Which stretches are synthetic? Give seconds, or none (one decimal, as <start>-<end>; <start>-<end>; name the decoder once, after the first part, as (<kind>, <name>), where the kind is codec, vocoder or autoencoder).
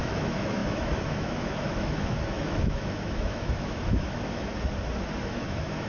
0.0-4.5 (autoencoder, DAC-VAE); 5.2-5.9